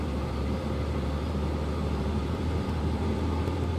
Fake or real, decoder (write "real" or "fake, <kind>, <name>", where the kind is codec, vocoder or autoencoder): fake, vocoder, BigVGAN v2